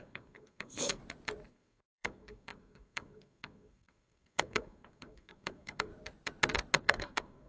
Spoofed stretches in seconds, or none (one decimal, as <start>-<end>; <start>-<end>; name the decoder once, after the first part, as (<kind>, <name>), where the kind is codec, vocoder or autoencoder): 0.0-1.0 (codec, SNAC); 1.5-5.9; 6.8-7.5